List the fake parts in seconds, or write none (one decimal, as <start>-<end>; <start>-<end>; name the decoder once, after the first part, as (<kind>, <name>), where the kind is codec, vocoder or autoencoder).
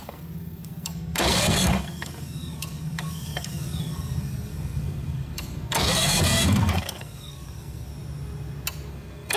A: 0.0-7.9 (codec, SNAC); 8.9-9.4